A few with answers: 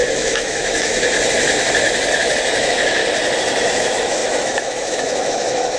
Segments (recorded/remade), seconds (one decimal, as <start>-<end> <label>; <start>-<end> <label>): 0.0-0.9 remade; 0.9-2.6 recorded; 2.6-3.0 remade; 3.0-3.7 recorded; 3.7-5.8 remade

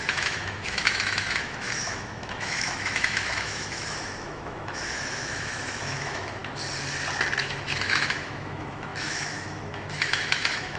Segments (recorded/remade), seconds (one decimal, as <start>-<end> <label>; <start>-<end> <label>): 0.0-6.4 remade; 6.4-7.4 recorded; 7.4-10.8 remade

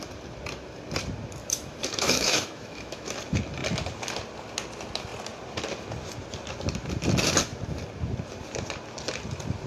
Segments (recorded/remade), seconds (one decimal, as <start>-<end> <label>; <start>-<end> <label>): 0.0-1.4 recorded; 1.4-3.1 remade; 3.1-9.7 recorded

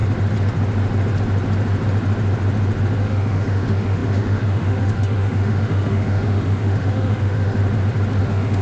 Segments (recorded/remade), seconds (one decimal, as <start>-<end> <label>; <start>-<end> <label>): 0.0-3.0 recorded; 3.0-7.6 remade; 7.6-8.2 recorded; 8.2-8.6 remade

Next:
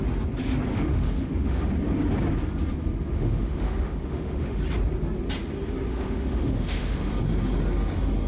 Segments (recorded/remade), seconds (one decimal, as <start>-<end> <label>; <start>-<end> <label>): 0.0-0.7 recorded; 0.7-1.7 remade; 1.7-3.1 recorded; 3.1-4.6 remade; 4.6-5.9 recorded; 5.9-7.1 remade; 7.1-8.3 recorded

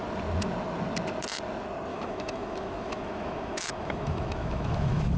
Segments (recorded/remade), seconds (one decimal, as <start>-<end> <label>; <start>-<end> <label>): 0.0-1.9 recorded; 1.9-5.2 remade

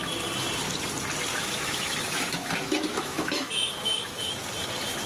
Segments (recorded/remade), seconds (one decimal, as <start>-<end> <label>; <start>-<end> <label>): 0.0-1.3 recorded; 1.3-4.4 remade; 4.4-5.1 recorded

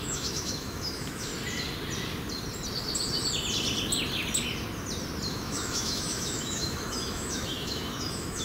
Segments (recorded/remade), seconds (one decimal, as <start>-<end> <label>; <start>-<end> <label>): 0.0-1.3 remade; 1.3-5.3 recorded; 5.3-8.4 remade